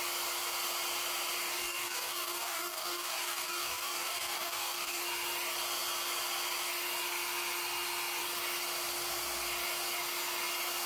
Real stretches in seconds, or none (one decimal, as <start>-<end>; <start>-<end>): 0.0-1.6; 5.0-10.9